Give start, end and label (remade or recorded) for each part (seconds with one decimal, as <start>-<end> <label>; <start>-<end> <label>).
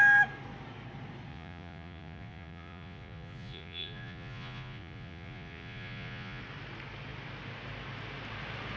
0.0-1.3 recorded; 1.3-6.4 remade; 6.4-8.8 recorded